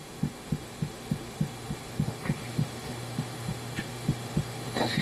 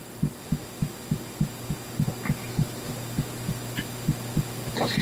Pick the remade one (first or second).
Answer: first